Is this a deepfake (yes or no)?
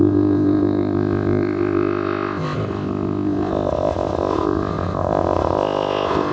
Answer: yes